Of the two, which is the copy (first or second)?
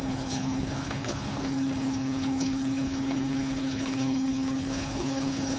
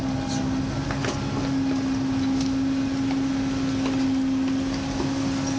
first